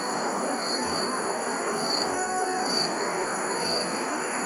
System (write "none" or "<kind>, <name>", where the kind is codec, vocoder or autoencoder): codec, DAC